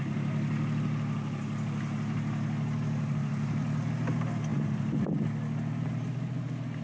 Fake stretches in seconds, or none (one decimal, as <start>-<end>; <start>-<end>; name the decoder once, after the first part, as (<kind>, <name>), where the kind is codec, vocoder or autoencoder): none